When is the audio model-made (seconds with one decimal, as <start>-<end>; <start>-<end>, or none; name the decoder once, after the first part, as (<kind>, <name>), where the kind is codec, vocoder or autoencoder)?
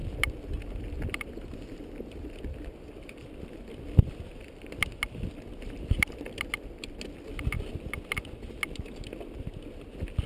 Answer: none